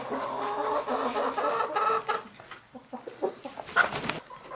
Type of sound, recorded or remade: recorded